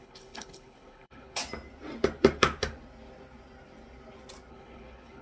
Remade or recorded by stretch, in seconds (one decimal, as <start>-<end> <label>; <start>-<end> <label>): 0.0-1.4 remade; 1.4-4.5 recorded; 4.5-5.2 remade